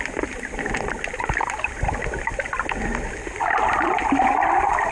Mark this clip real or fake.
real